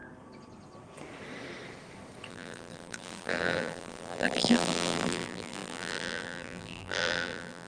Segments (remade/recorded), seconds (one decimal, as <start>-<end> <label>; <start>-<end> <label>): 0.0-2.3 recorded; 2.3-7.7 remade

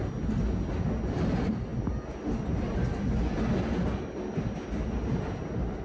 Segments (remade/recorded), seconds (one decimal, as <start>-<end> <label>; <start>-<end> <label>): 0.0-5.8 recorded

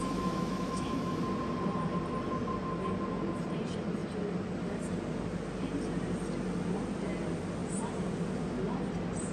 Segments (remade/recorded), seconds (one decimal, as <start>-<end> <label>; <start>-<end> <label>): 0.0-1.2 remade; 1.2-9.3 recorded

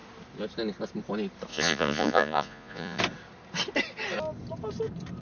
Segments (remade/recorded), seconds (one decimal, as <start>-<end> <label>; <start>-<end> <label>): 0.0-1.5 recorded; 1.5-3.0 remade; 3.0-5.2 recorded

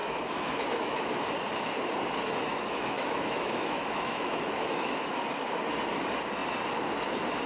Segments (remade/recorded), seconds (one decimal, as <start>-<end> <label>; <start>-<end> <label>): 0.0-1.2 remade; 1.2-2.5 recorded; 2.5-5.1 remade; 5.1-7.5 recorded

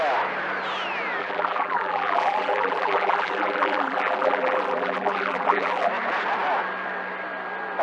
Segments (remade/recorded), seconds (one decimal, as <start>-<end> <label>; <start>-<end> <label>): 0.0-1.2 recorded; 1.2-5.9 remade; 5.9-7.8 recorded

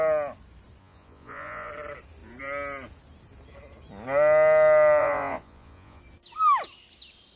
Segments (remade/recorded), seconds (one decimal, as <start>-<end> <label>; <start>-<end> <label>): 0.0-0.8 recorded; 0.8-1.7 remade; 1.7-5.0 recorded; 5.0-6.0 remade; 6.0-7.4 recorded